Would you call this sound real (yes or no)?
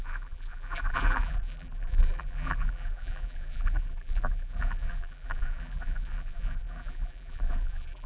no